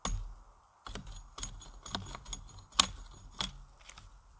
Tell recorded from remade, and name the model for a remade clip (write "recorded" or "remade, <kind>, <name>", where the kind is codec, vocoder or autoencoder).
recorded